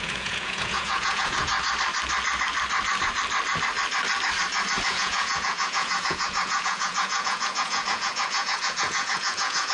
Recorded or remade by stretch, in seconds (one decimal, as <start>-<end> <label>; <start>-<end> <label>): 0.0-1.5 remade; 1.5-4.9 recorded; 4.9-9.7 remade

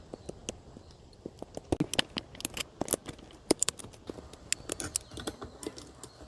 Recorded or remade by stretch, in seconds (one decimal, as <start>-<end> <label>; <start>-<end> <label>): 0.0-3.0 recorded; 3.0-3.8 remade; 3.8-6.3 recorded

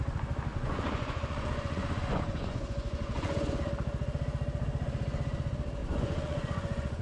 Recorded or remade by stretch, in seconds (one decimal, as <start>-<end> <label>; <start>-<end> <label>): 0.0-0.5 recorded; 0.5-3.7 remade; 3.7-5.8 recorded; 5.8-7.0 remade

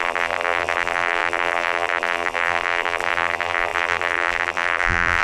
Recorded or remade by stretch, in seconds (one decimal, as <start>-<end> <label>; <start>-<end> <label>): 0.0-5.2 remade